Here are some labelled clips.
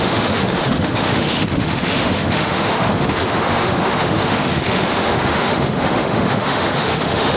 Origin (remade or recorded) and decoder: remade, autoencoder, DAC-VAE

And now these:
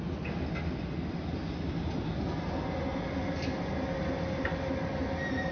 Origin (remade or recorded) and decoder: recorded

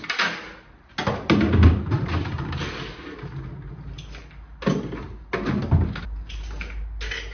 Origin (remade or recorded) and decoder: recorded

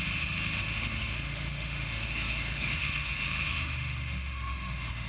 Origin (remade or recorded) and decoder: remade, autoencoder, DAC-VAE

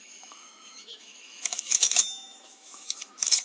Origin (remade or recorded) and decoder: remade, autoencoder, DAC-VAE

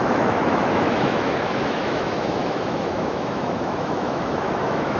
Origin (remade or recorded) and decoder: remade, autoencoder, DAC-VAE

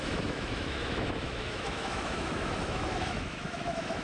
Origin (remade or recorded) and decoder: remade, autoencoder, DAC-VAE